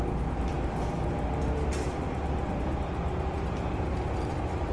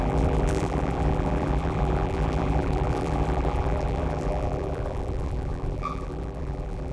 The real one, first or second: first